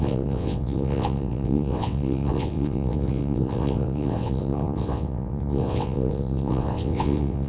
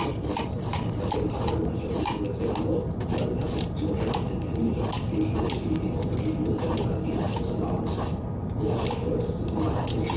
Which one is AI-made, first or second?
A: first